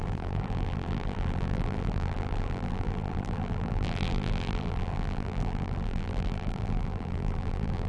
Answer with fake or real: fake